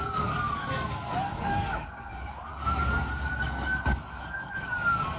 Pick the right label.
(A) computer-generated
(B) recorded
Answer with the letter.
A